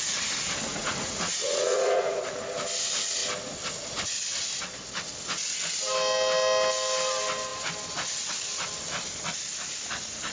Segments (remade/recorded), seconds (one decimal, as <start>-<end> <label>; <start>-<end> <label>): 0.0-0.7 recorded; 0.7-2.3 remade; 2.3-10.3 recorded